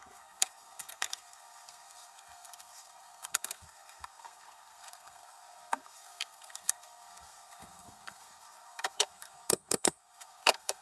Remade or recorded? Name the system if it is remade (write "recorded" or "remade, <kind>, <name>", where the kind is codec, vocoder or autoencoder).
remade, codec, SNAC